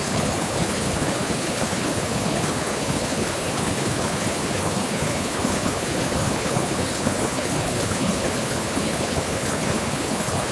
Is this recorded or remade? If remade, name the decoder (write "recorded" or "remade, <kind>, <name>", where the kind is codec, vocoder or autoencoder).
remade, codec, HILCodec